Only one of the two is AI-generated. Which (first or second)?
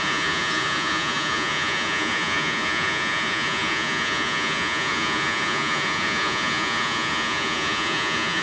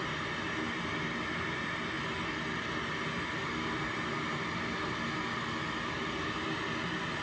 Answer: first